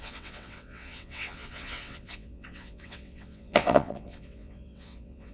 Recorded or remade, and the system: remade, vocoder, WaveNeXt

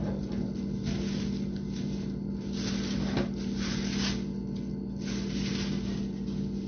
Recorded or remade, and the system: recorded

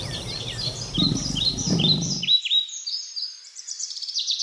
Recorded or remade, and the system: remade, vocoder, BigVGAN v2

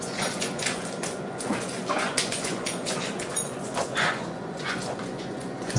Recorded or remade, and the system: remade, vocoder, Vocos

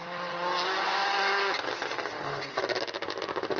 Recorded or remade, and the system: recorded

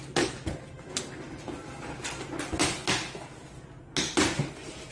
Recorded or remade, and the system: recorded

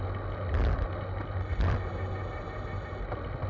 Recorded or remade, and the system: recorded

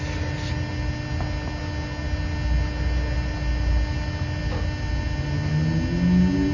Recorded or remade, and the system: recorded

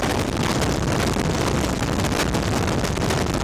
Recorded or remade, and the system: recorded